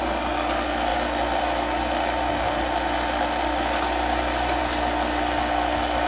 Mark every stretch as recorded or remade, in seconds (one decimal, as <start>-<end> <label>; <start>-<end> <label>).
0.0-6.1 recorded